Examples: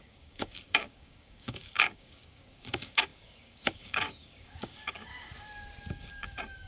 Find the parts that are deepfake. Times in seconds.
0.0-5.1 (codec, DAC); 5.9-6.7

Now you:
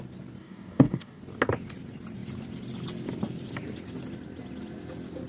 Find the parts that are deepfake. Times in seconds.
0.4-1.2 (codec, DAC)